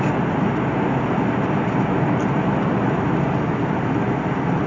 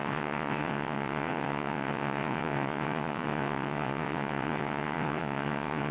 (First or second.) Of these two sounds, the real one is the first